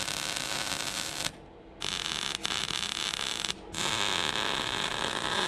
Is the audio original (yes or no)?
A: yes